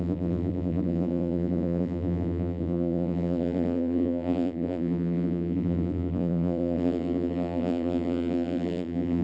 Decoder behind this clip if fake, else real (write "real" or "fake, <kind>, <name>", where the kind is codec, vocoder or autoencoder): fake, vocoder, BigVGAN v2